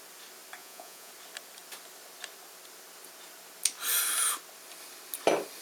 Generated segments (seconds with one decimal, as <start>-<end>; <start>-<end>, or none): 0.6-1.1